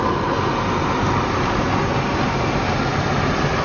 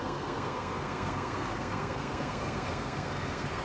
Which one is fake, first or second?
second